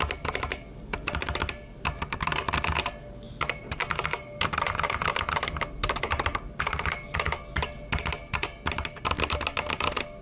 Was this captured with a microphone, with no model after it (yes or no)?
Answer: yes